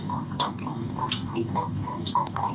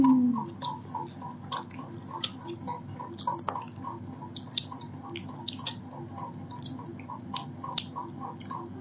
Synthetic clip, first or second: first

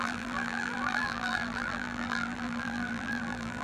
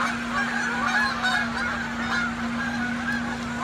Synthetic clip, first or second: first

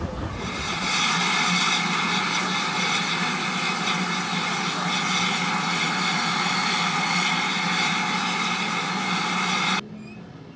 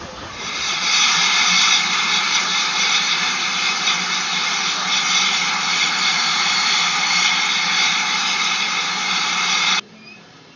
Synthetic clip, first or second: second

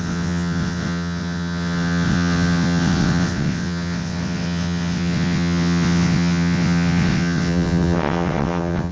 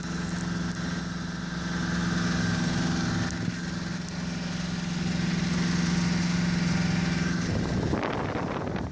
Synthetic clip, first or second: first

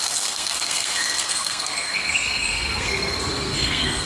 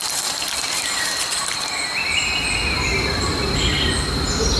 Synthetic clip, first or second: first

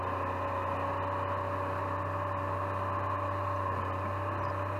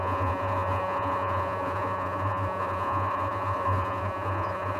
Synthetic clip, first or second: second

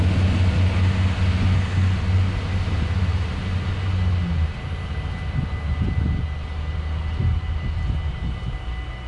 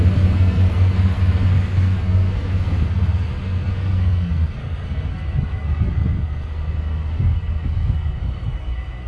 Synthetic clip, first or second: second